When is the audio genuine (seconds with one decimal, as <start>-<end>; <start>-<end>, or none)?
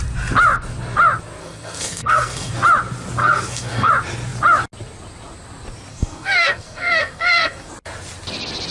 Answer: 0.0-1.4; 2.5-3.2; 3.9-5.9; 7.7-8.7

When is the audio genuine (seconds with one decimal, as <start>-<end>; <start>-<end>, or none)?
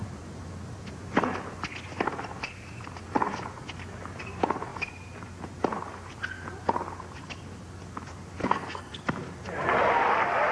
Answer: 0.0-8.4; 9.0-10.5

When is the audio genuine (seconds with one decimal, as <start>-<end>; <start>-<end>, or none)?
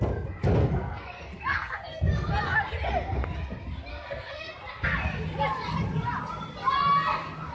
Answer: 0.0-0.6; 2.3-3.9; 4.5-7.5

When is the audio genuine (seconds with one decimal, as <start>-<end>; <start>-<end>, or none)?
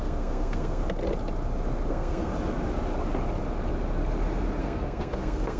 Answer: 0.8-1.9; 2.3-4.6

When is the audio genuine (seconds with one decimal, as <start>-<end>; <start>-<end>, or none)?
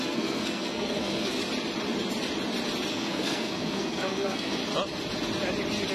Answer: 1.4-2.9; 4.6-5.9